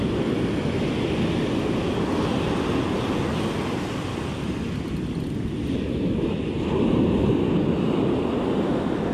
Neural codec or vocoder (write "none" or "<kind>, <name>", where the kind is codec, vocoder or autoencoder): none